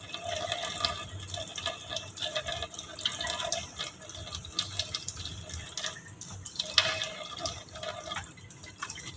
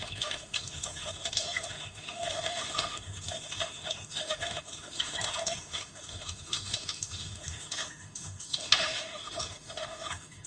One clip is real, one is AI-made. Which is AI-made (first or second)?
second